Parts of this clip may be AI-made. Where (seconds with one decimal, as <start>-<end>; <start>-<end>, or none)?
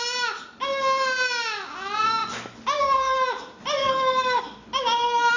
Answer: 3.8-4.4